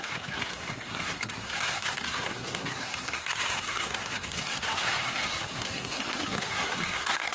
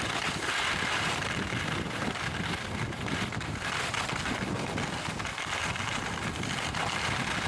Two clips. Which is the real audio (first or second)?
second